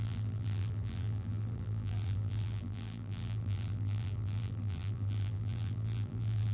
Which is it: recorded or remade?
remade